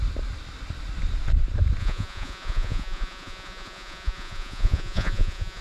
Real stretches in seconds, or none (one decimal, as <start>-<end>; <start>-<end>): 0.0-1.8

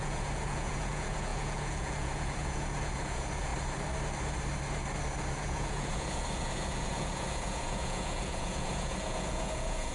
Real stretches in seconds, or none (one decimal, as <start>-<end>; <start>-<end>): 3.5-5.4

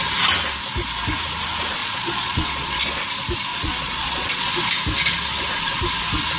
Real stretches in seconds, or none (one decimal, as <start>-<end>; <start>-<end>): 0.0-1.8; 2.8-3.5; 4.5-6.4

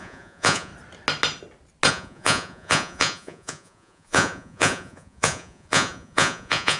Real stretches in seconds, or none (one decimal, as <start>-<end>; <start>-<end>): 0.7-1.9

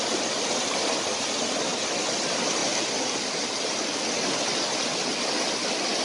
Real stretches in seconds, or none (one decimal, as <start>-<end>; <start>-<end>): 0.0-6.0

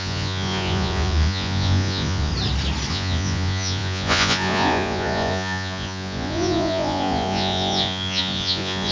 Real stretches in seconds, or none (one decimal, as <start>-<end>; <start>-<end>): 2.3-2.9

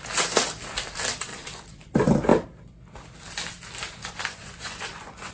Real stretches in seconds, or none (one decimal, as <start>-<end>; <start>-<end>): 0.0-1.3; 1.9-4.0